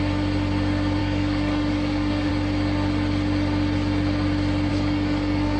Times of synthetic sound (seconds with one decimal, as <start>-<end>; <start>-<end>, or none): 1.0-2.3; 4.7-5.6